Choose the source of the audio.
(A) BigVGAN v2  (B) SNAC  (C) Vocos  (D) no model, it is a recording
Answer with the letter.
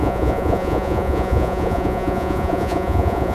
C